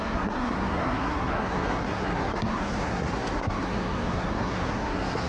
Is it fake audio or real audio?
fake